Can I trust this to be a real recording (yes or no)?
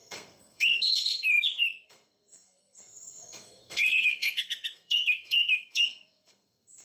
no